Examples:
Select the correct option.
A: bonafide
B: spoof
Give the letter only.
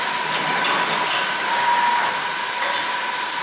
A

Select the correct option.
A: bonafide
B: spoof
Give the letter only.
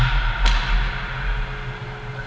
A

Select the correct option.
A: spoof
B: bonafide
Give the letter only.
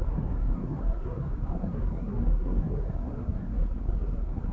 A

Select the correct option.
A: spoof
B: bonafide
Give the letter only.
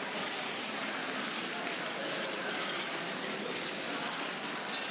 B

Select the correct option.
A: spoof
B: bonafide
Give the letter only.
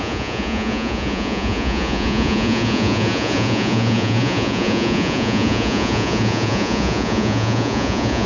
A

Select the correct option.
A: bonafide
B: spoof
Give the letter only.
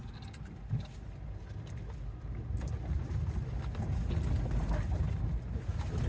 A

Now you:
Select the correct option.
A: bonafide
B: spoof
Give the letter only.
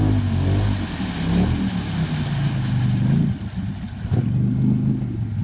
A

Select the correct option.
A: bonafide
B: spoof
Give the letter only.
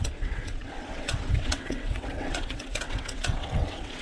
B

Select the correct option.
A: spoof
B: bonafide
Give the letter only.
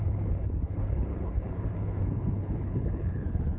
A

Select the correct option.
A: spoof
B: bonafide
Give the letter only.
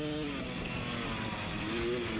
B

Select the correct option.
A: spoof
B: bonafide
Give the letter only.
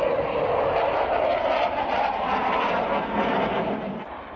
B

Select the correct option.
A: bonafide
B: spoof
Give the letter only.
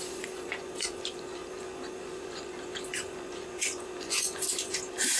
B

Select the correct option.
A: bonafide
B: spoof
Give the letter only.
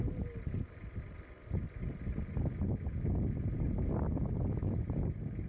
A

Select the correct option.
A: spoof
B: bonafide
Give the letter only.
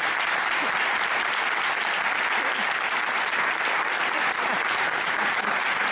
B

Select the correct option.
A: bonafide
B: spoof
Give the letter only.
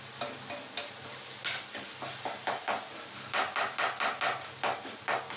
A